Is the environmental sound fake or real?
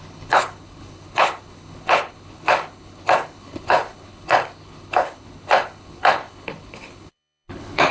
fake